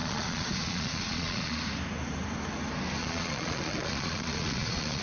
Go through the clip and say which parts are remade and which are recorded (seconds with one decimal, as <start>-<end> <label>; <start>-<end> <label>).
0.0-1.6 remade; 1.6-3.0 recorded; 3.0-5.0 remade